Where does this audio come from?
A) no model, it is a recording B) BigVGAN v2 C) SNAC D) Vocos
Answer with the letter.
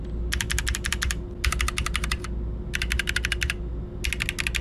A